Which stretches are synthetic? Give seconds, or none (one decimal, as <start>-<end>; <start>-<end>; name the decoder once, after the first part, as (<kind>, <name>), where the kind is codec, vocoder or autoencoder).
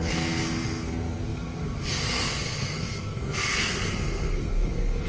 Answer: 0.0-5.1 (codec, SNAC)